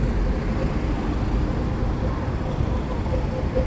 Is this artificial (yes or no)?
no